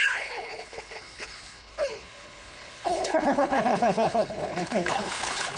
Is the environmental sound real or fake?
fake